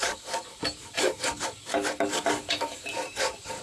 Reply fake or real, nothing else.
fake